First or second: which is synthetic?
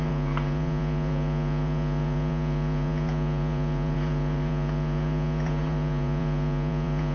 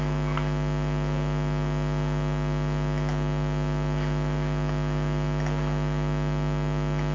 first